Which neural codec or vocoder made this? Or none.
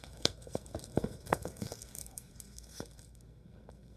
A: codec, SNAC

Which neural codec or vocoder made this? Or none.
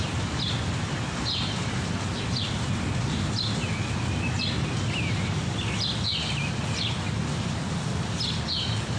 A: none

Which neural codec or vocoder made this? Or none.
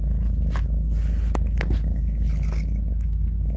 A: none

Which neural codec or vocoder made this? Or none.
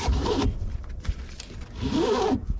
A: vocoder, BigVGAN v2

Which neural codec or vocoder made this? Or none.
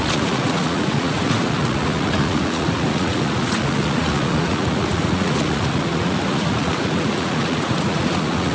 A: vocoder, Vocos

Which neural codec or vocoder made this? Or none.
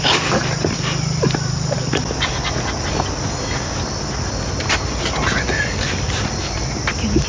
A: none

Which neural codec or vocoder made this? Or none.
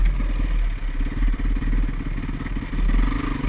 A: none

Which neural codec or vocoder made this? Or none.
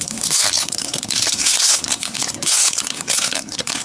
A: codec, SNAC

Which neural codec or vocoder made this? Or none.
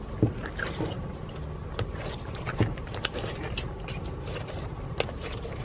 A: none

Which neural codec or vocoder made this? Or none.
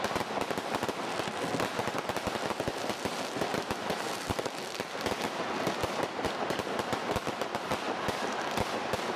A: none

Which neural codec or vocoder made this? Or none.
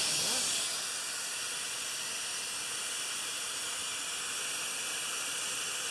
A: none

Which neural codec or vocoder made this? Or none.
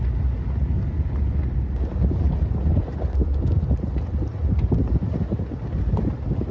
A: none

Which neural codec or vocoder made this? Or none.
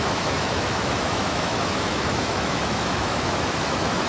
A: autoencoder, DAC-VAE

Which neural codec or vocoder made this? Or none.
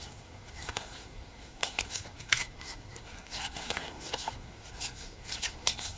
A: codec, SNAC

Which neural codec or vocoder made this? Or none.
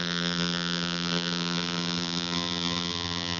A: vocoder, BigVGAN v2